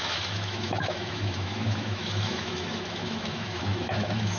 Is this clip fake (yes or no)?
yes